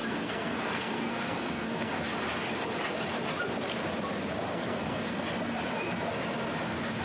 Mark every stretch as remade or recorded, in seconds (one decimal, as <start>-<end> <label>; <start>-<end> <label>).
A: 0.0-2.0 remade; 2.0-4.5 recorded; 4.5-5.2 remade; 5.2-7.0 recorded